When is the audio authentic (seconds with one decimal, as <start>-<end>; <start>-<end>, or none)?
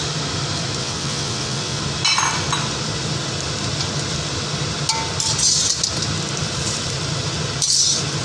0.0-0.8; 1.8-8.2